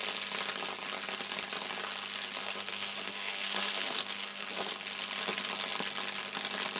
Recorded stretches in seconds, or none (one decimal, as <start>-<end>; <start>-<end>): 0.0-2.4; 4.7-6.8